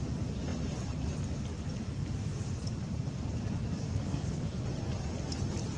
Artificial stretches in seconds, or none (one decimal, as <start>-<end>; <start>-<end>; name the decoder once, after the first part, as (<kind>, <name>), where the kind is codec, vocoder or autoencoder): 3.9-4.6 (codec, SNAC)